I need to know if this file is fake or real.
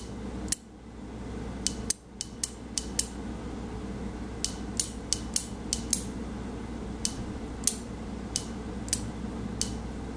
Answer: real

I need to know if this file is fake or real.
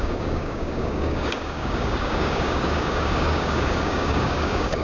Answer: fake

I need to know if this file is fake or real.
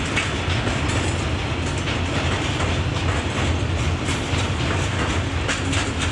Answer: real